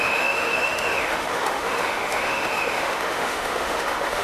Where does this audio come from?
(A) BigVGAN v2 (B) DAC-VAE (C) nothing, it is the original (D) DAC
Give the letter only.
B